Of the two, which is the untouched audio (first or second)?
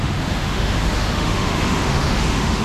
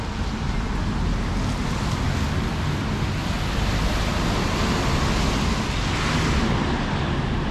second